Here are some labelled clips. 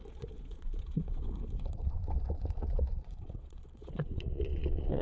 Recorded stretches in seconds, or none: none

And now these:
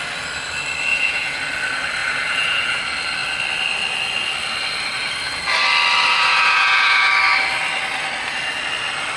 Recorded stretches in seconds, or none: 0.0-0.9; 1.4-2.0; 2.8-6.1; 7.1-9.2